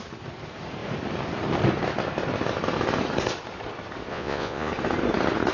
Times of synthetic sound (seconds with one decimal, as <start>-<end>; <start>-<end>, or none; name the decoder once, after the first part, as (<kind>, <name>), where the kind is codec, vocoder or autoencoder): 4.1-4.7 (vocoder, Vocos)